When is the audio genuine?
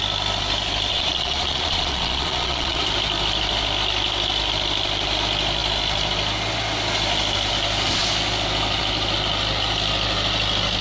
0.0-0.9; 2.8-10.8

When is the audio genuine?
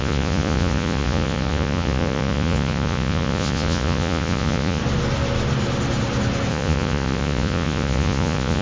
4.8-6.5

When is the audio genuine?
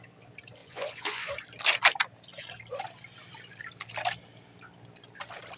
0.0-0.6; 1.3-5.6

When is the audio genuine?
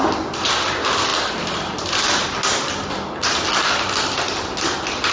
0.0-5.1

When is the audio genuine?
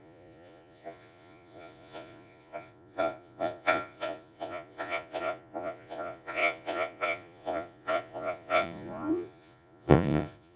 none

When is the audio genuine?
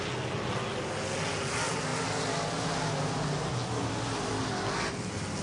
0.0-5.4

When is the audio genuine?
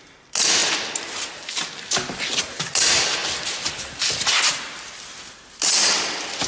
0.0-6.5